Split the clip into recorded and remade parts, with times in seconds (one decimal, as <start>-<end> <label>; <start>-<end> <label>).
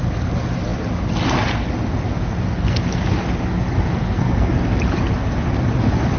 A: 0.0-2.6 recorded; 2.6-3.2 remade; 3.2-3.9 recorded; 3.9-4.5 remade; 4.5-6.2 recorded